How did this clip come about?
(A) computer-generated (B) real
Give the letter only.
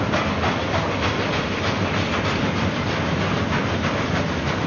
B